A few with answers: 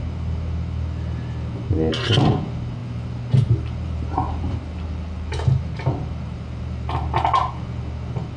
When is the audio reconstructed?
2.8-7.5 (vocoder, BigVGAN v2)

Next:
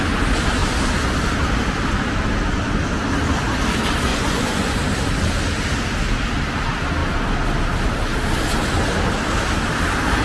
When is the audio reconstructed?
4.1-4.8 (vocoder, Vocos)

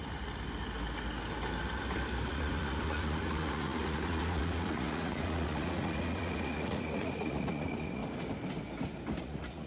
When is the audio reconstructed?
2.3-8.0 (vocoder, Vocos); 9.2-9.7

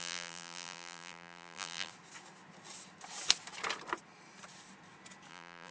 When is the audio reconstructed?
0.0-1.9 (vocoder, BigVGAN v2); 5.3-5.7

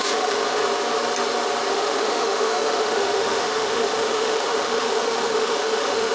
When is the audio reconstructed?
0.0-0.6 (autoencoder, DAC-VAE); 1.7-6.1

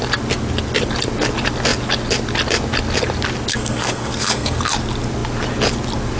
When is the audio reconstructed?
3.5-4.6 (codec, SNAC)